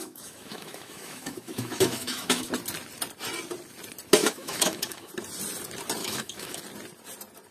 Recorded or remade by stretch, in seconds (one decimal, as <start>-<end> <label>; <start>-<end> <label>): 0.0-2.5 remade; 2.5-4.2 recorded; 4.2-5.1 remade; 5.1-6.0 recorded; 6.0-6.6 remade; 6.6-7.5 recorded